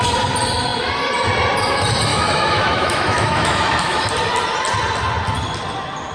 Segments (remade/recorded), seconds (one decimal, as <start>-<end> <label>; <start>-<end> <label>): 0.0-2.1 recorded; 2.1-4.1 remade; 4.1-6.1 recorded